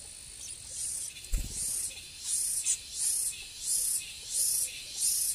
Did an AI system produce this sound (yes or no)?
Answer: no